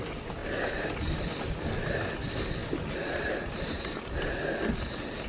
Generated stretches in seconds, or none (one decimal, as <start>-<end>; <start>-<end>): none